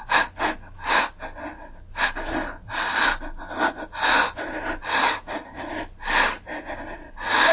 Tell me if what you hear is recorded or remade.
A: recorded